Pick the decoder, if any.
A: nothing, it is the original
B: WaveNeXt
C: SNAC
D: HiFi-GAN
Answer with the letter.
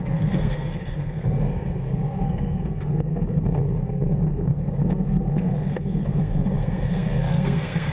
C